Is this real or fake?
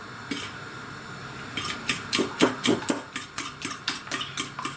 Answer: real